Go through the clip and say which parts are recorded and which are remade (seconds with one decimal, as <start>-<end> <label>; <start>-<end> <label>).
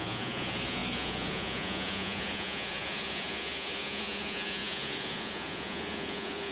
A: 0.0-6.5 remade